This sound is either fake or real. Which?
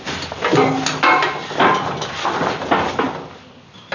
real